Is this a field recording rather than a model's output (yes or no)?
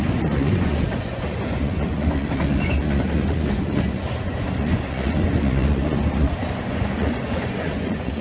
no